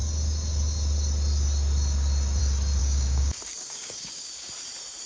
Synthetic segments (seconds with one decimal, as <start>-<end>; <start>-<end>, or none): 2.8-4.5

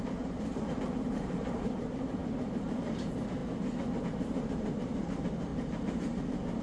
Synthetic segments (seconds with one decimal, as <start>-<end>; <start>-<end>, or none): 0.0-2.2; 2.8-3.4; 4.0-6.6